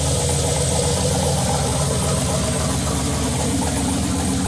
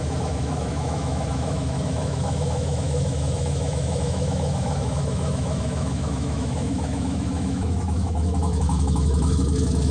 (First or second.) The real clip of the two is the first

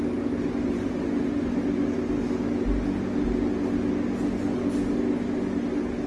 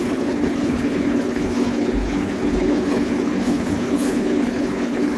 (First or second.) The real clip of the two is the first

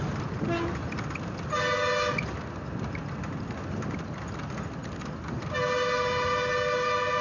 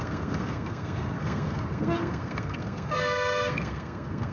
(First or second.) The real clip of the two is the first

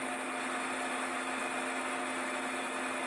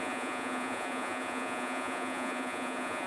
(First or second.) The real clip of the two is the first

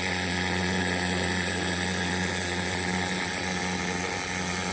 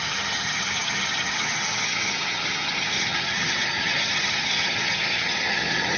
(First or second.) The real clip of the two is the first